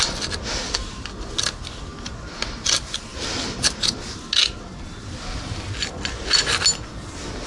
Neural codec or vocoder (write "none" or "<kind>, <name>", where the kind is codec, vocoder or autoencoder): none